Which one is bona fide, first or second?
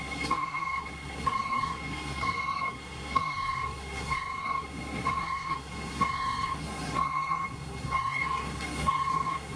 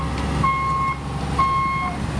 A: second